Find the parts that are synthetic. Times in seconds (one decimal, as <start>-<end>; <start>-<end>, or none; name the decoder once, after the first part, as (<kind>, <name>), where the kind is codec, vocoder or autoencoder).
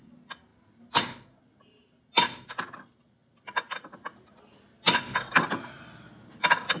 none